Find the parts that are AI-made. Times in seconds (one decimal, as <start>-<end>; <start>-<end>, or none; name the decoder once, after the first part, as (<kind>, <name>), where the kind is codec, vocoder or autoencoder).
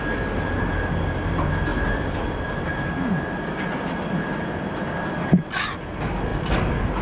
none